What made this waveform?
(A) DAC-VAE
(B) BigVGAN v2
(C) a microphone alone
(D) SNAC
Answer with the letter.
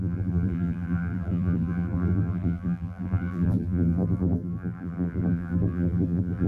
B